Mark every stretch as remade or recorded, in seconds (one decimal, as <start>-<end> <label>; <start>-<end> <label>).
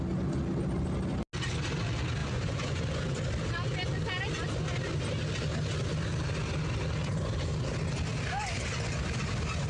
0.0-2.2 recorded; 2.2-2.8 remade; 2.8-9.7 recorded